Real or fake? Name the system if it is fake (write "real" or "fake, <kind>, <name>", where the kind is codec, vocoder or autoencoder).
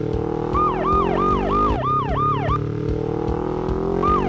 real